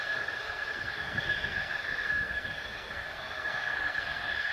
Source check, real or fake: fake